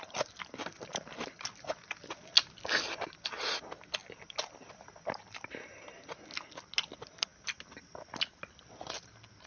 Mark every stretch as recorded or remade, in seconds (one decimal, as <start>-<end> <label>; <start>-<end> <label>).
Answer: 0.0-9.5 recorded